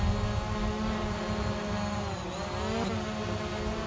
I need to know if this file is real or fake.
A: real